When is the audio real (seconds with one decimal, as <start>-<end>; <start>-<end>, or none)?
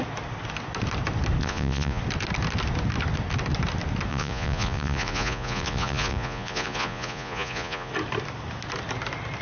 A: 0.0-1.4; 2.0-4.1; 7.9-9.4